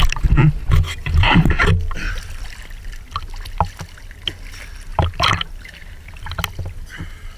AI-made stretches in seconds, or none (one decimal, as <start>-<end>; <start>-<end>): 1.0-2.1; 4.9-6.3